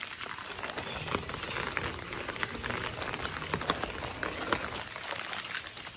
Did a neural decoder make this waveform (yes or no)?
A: no